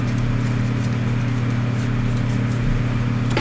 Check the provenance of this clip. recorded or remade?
recorded